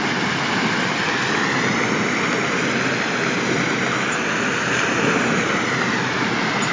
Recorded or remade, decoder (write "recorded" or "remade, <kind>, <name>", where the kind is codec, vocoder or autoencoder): recorded